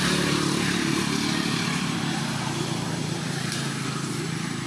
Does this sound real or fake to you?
fake